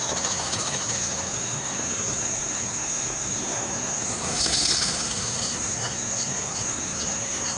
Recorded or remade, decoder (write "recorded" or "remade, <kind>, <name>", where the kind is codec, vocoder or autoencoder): remade, codec, SNAC